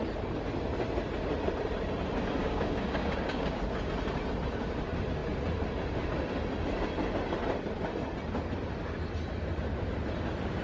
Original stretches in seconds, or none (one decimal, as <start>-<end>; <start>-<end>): 0.0-2.4; 3.6-10.6